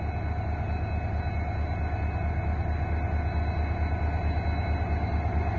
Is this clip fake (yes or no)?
no